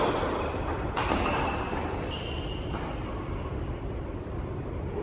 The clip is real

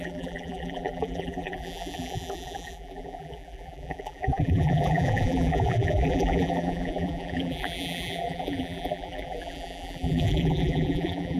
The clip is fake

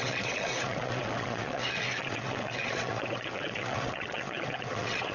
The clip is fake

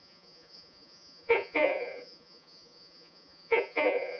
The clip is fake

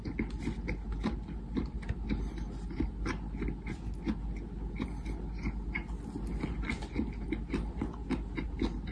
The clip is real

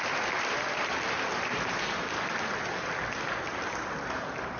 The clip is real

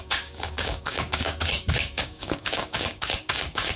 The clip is fake